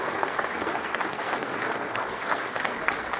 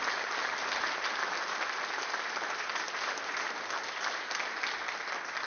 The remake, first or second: first